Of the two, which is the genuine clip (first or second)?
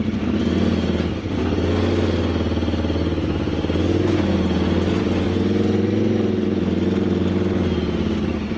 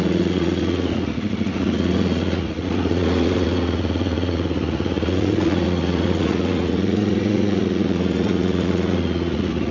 first